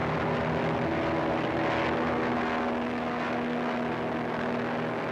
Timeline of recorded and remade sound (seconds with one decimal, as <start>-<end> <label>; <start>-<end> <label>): 0.0-5.1 recorded